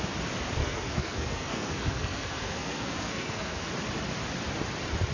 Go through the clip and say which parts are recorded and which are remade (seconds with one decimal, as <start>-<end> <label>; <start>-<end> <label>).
0.0-0.6 recorded; 0.6-3.7 remade; 3.7-5.1 recorded

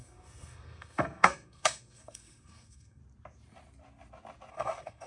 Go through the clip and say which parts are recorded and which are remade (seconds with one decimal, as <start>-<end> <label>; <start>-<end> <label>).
0.0-3.0 remade; 3.0-4.5 recorded; 4.5-5.1 remade